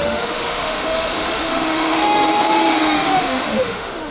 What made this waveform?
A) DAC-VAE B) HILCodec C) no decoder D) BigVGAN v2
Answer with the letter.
A